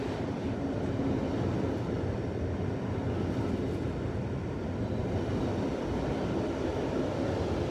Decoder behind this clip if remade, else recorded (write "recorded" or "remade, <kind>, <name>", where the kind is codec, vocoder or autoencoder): recorded